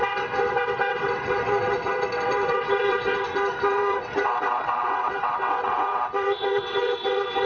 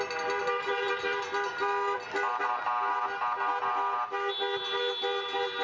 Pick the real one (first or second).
second